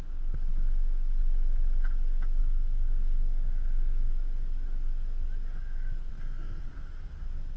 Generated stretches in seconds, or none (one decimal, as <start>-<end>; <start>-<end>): 2.4-4.1; 6.1-6.6